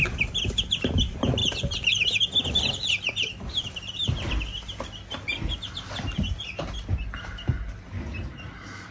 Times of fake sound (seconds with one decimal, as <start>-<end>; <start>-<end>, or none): 1.4-4.4